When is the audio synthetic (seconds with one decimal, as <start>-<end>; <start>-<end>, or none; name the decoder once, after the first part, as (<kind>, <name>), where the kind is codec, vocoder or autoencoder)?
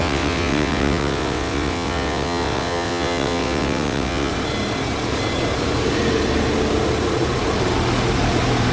0.0-4.3 (vocoder, WaveNeXt)